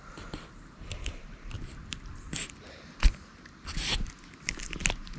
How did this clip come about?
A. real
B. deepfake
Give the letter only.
A